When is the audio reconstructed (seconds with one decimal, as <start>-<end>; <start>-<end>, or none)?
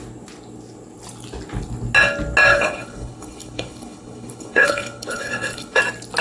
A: 2.5-5.8